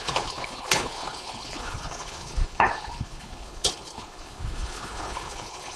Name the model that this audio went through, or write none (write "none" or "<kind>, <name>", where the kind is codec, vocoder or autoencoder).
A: codec, HILCodec